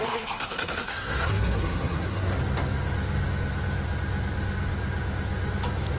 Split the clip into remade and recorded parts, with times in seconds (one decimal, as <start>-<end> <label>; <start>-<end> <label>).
0.0-2.3 remade; 2.3-6.0 recorded